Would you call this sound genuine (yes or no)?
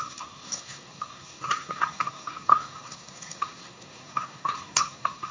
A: no